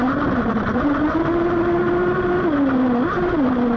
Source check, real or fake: real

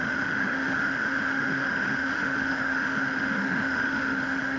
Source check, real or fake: fake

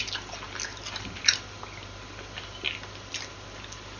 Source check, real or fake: real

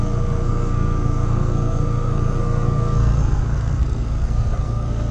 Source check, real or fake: fake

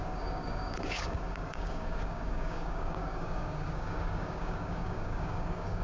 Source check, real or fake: fake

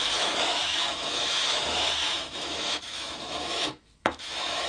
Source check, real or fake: fake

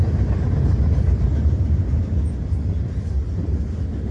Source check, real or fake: real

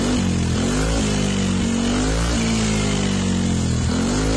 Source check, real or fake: real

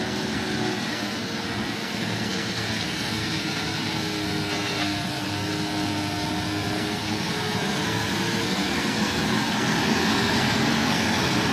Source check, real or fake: fake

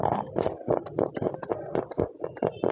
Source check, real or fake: real